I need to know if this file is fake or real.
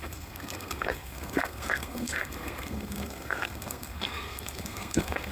fake